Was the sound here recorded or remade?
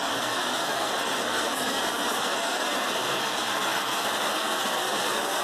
remade